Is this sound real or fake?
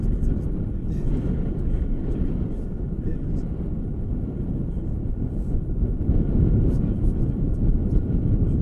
real